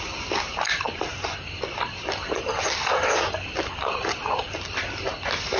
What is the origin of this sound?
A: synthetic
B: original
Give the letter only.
B